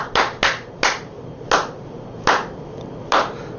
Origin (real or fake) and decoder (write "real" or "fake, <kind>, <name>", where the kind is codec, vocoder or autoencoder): real